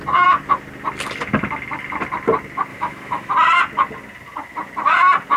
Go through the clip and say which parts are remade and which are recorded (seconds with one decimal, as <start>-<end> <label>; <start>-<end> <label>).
0.0-2.7 recorded; 2.7-3.3 remade; 3.3-5.4 recorded

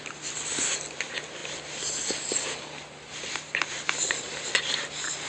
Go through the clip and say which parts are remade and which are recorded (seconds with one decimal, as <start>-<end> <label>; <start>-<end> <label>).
0.0-1.4 recorded; 1.4-4.6 remade; 4.6-5.3 recorded

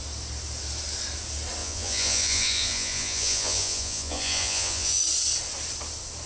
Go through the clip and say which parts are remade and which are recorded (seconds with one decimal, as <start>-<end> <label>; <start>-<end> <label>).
0.0-1.6 recorded; 1.6-5.0 remade; 5.0-6.3 recorded